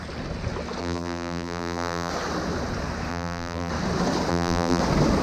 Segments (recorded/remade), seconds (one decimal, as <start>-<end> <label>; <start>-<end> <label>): 0.0-0.8 recorded; 0.8-2.1 remade; 2.1-3.1 recorded; 3.1-3.7 remade; 3.7-4.3 recorded; 4.3-4.8 remade; 4.8-5.2 recorded